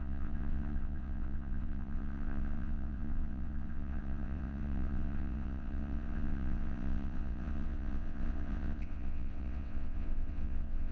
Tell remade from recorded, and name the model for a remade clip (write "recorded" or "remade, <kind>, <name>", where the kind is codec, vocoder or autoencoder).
remade, vocoder, WaveNeXt